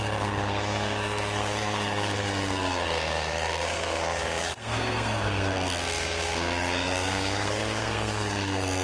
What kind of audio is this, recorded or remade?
remade